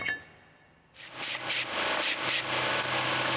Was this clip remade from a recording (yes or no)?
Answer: no